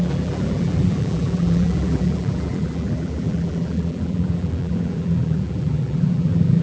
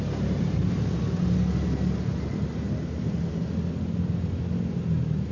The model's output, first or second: first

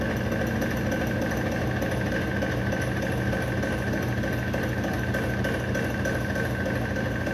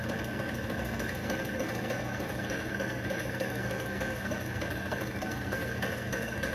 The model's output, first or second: second